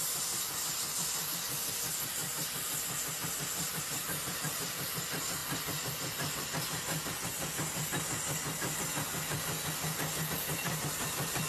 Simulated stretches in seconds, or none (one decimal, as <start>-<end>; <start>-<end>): 0.0-5.4; 10.3-11.5